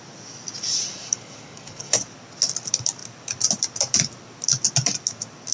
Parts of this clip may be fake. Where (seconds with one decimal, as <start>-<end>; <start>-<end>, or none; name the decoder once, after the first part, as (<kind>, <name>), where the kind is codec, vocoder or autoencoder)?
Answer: 0.9-2.0 (codec, DAC)